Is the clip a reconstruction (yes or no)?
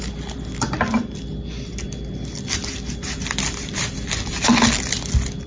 no